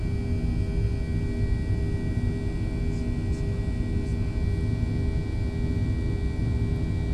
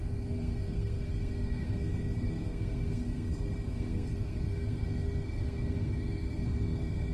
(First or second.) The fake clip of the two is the second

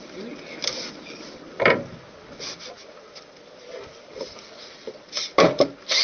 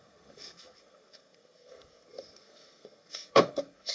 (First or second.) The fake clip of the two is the second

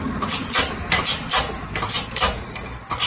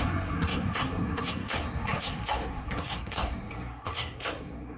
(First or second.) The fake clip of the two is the second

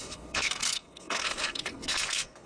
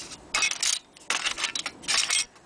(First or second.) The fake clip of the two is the first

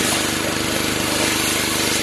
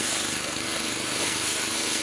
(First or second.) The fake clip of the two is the second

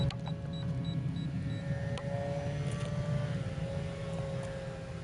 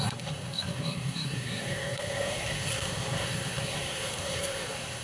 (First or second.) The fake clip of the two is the second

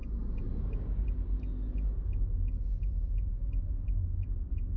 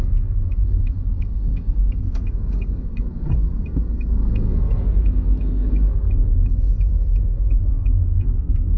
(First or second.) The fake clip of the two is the second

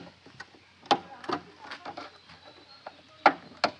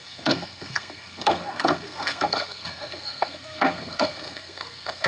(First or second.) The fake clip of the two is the second